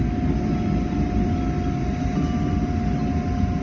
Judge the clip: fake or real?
real